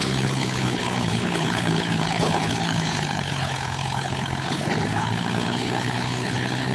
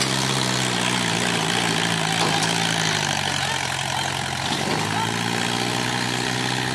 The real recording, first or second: second